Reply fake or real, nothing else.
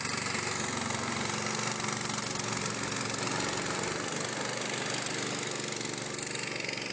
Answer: real